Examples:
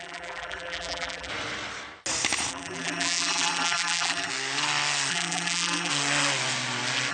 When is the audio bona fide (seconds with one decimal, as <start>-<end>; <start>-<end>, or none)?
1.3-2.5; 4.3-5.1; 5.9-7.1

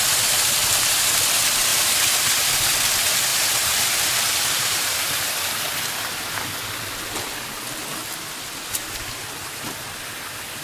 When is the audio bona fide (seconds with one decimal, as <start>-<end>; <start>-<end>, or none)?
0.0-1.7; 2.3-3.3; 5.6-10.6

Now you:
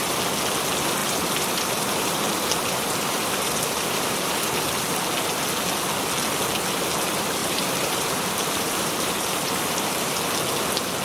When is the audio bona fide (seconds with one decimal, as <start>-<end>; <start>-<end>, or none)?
0.0-1.0; 5.0-7.4; 10.2-11.0

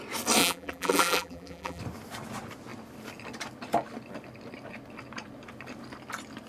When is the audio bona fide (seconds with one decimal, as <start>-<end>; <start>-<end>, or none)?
0.0-0.4; 1.8-6.5